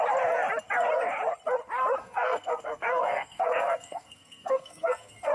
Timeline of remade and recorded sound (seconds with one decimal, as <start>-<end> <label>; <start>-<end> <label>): 0.0-2.0 recorded; 2.0-5.3 remade